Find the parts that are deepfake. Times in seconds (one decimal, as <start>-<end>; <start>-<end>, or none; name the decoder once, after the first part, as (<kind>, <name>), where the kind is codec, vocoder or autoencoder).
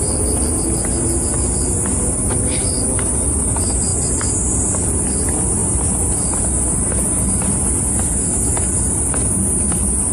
none